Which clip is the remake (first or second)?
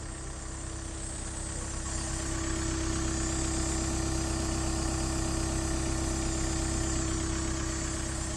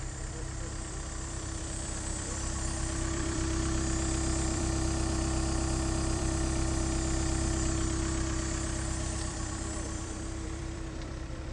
second